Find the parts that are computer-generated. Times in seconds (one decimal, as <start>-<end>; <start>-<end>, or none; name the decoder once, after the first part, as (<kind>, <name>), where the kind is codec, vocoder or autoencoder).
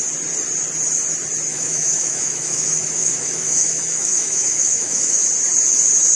1.5-5.2 (autoencoder, DAC-VAE)